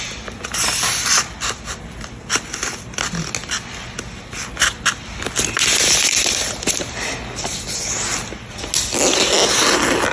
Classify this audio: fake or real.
real